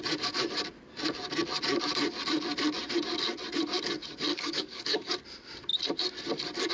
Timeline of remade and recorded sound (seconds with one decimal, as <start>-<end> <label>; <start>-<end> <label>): 0.0-4.3 recorded; 4.3-5.1 remade; 5.1-6.7 recorded